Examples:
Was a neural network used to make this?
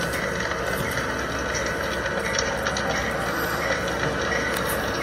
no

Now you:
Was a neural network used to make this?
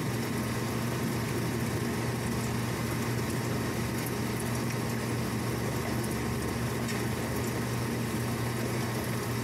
no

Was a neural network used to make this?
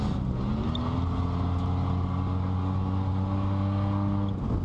no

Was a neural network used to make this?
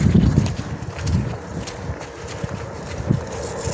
no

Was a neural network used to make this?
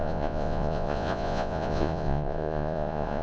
yes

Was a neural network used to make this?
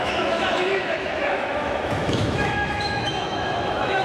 yes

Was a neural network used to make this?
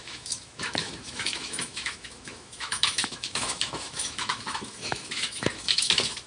yes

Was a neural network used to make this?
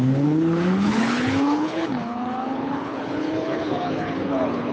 yes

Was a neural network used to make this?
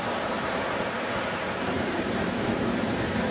no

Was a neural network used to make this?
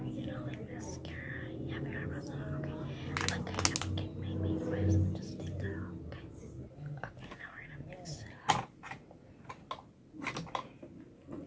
no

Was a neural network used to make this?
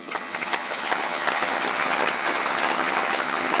yes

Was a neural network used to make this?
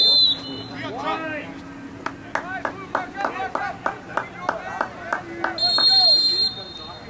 no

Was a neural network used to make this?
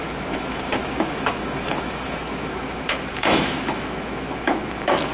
yes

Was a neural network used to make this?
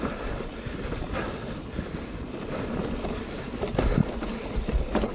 no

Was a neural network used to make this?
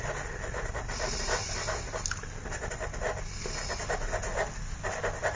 no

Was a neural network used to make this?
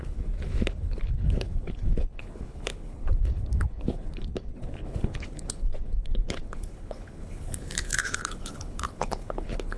yes